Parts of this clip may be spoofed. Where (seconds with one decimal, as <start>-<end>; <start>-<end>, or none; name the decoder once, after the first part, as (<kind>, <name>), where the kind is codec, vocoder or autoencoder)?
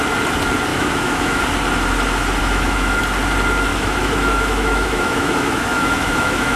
0.7-1.4 (autoencoder, DAC-VAE); 2.4-3.0; 3.7-6.6